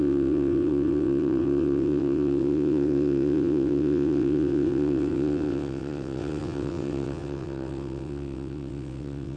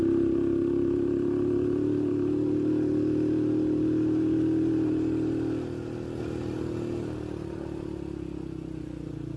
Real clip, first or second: second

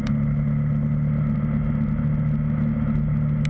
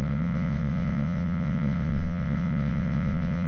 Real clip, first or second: first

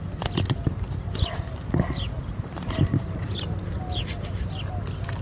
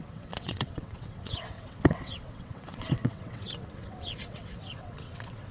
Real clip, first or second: first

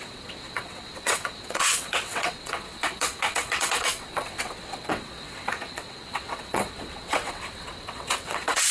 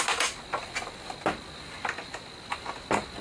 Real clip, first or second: second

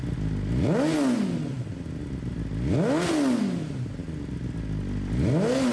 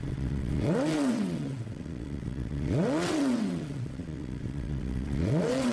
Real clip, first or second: first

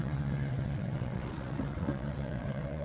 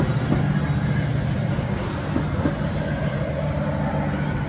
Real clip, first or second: second